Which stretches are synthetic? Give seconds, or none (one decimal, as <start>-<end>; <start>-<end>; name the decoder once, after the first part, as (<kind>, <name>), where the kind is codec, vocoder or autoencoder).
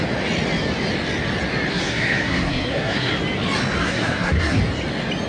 1.7-3.1 (codec, SNAC); 3.8-4.6